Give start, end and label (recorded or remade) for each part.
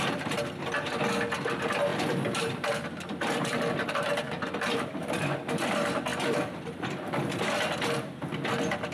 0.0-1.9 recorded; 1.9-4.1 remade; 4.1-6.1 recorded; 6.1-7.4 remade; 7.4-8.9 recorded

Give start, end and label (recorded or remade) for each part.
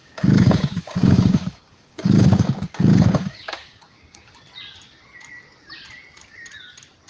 0.0-4.3 remade; 4.3-7.1 recorded